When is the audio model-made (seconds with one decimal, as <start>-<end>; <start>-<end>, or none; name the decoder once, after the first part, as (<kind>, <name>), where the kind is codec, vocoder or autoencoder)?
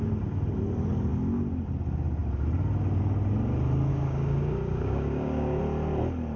3.9-5.6 (codec, DAC)